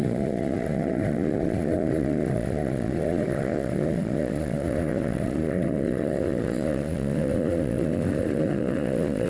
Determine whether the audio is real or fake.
fake